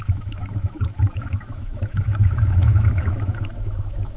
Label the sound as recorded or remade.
remade